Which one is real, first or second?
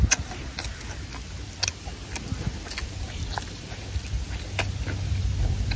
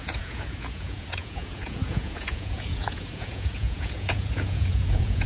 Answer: first